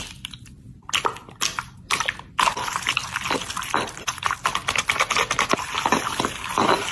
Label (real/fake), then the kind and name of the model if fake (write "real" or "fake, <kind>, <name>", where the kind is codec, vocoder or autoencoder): real